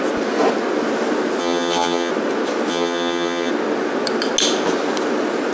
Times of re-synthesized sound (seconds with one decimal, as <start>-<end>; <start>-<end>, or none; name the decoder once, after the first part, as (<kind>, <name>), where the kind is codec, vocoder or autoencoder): 1.4-2.1 (vocoder, HiFi-GAN); 2.7-3.5